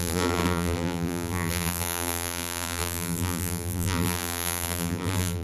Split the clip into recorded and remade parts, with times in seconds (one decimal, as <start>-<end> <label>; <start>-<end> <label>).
0.0-5.4 remade